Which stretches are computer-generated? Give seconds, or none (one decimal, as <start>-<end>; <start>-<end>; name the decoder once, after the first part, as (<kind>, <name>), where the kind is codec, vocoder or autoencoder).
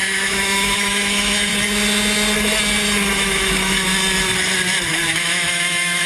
0.0-1.5 (autoencoder, DAC-VAE); 3.1-3.9; 4.9-6.1